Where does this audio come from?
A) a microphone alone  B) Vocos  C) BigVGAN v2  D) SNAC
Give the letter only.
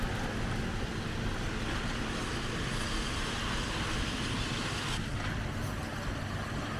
A